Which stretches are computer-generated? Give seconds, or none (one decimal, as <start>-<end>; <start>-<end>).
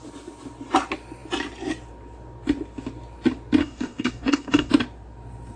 3.6-4.7